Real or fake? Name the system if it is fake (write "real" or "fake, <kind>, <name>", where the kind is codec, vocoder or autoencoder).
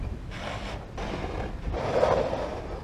real